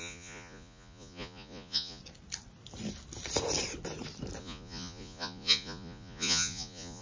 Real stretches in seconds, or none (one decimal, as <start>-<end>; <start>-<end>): 2.0-4.4